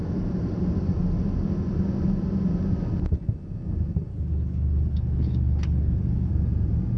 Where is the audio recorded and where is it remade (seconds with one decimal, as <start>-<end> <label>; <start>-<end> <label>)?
0.0-4.1 recorded; 4.1-6.3 remade; 6.3-7.0 recorded

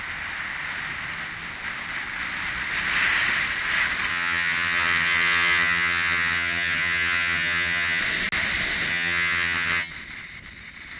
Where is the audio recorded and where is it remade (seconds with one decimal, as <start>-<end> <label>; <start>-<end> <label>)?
0.0-4.1 recorded; 4.1-8.0 remade; 8.0-8.9 recorded; 8.9-9.9 remade; 9.9-11.0 recorded

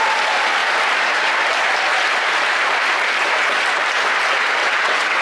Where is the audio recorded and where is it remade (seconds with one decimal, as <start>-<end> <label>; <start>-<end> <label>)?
0.0-4.6 recorded; 4.6-5.2 remade

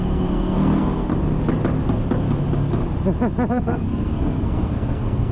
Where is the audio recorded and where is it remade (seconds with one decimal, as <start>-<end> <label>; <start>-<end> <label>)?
0.0-1.1 remade; 1.1-3.5 recorded; 3.5-5.3 remade